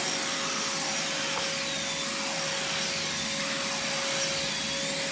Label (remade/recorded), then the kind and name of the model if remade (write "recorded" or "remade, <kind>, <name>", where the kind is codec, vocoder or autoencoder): recorded